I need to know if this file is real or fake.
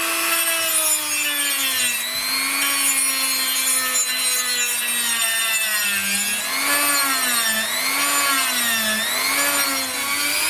real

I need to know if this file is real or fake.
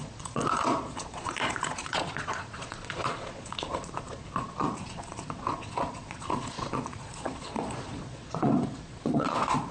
fake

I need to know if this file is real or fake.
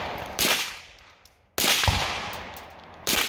real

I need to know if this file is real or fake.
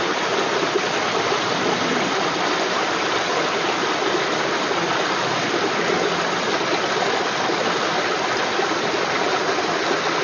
real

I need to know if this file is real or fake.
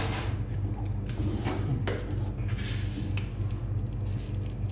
real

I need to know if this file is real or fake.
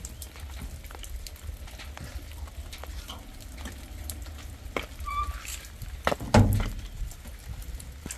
real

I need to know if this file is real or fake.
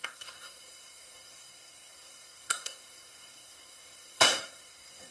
fake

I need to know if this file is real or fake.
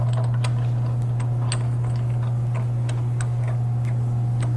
real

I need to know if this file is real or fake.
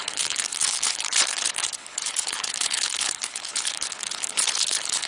fake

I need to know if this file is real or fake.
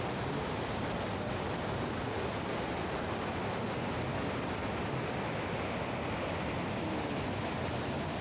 real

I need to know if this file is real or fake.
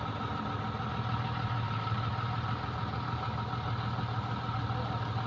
real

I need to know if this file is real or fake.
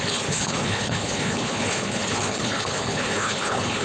fake